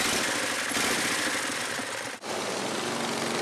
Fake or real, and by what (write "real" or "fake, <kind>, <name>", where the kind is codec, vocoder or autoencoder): real